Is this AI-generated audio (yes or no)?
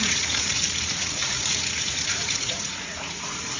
yes